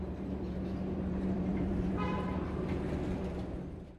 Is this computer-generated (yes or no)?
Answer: yes